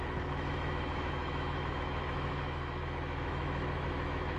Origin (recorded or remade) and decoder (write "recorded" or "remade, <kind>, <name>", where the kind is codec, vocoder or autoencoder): remade, autoencoder, DAC-VAE